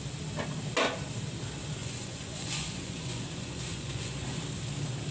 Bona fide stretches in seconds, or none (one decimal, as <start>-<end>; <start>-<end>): 0.0-1.8; 4.4-5.1